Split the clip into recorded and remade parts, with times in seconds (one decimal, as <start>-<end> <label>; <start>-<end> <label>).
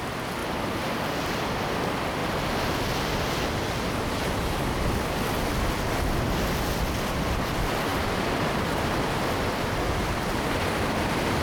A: 0.0-0.4 remade; 0.4-1.1 recorded; 1.1-2.2 remade; 2.2-6.8 recorded; 6.8-11.4 remade